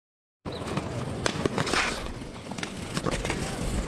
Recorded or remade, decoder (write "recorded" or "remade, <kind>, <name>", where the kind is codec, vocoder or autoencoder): remade, vocoder, Vocos